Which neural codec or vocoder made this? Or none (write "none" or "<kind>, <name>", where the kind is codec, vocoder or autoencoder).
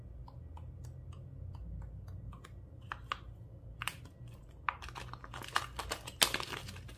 none